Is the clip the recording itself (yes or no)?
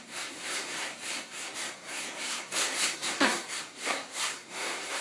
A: no